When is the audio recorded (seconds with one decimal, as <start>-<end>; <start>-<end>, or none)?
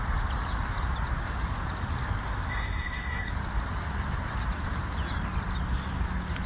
0.0-2.5; 3.3-6.5